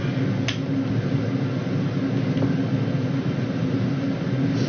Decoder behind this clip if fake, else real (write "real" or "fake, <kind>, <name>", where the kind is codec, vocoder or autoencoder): real